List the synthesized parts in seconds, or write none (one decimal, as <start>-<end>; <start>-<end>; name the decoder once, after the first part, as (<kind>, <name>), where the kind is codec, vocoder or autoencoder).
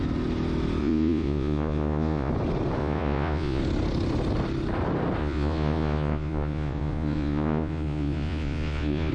0.8-2.3 (vocoder, Vocos); 2.8-3.6; 5.2-9.1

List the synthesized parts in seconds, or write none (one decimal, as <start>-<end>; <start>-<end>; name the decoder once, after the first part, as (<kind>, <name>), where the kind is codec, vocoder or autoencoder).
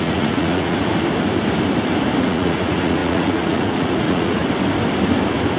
0.0-0.9 (vocoder, Vocos); 2.2-4.4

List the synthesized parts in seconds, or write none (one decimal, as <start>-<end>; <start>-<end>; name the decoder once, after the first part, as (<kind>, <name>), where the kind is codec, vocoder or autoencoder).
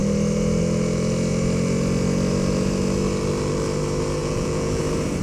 4.2-4.8 (vocoder, Vocos)